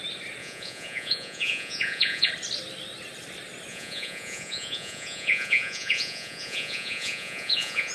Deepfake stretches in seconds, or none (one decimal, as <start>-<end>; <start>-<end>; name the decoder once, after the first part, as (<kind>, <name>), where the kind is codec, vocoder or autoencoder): 0.4-2.3 (vocoder, Vocos); 3.7-7.9